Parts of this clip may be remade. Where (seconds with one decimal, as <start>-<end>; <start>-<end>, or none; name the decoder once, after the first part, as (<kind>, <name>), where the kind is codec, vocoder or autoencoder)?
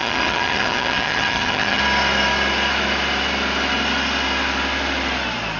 0.0-1.8 (vocoder, HiFi-GAN)